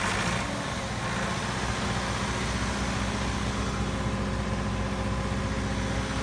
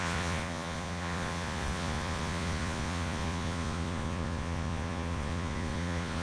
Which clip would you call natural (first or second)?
first